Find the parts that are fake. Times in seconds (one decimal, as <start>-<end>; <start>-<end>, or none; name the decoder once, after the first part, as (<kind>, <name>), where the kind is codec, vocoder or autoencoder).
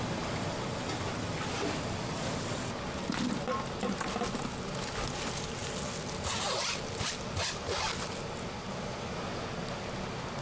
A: none